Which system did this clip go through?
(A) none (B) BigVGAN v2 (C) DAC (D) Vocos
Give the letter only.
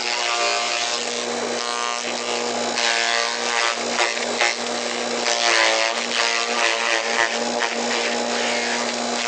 A